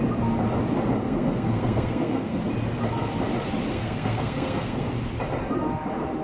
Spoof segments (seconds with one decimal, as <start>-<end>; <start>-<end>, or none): 1.0-2.4; 3.7-4.9